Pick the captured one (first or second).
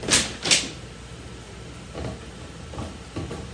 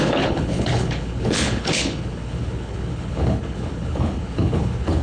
first